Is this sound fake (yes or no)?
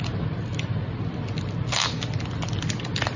no